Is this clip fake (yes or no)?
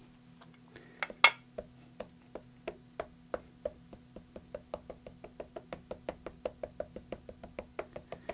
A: no